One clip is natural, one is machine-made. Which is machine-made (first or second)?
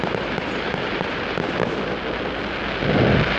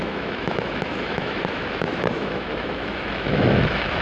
second